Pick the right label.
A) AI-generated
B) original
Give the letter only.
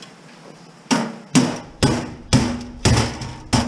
B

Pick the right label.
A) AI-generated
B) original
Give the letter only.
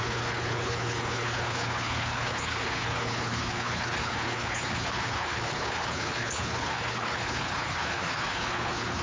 A